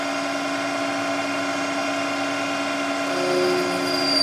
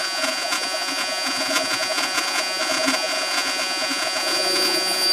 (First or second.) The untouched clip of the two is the first